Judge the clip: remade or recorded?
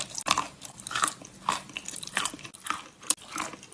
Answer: recorded